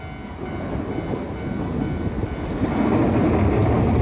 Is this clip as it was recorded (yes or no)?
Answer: yes